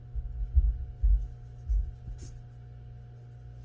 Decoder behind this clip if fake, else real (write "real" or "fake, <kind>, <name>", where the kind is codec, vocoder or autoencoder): real